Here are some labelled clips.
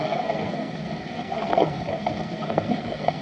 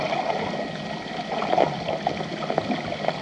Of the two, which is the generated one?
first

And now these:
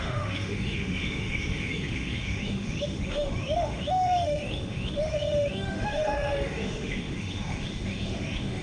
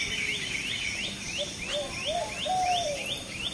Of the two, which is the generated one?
first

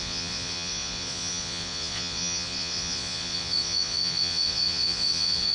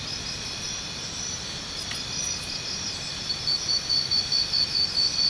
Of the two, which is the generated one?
first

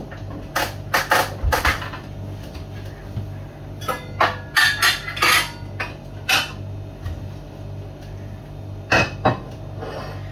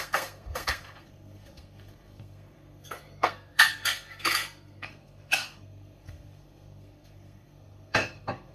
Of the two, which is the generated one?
second